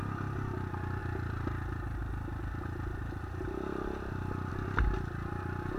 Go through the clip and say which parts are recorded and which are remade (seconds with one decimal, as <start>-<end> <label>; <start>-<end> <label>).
0.0-5.8 recorded